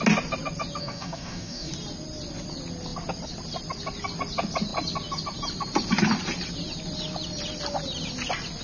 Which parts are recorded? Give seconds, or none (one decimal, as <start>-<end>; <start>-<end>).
0.0-0.8; 1.7-8.6